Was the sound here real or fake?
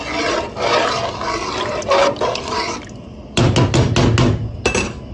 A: real